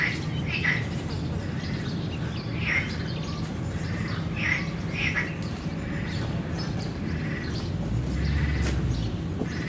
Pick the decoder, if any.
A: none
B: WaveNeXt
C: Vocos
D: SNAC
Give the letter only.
A